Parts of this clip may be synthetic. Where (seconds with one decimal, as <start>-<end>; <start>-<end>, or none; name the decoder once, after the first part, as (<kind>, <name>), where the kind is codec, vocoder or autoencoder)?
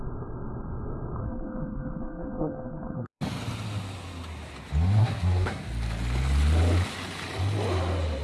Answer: 1.2-3.2 (codec, SNAC); 5.0-5.6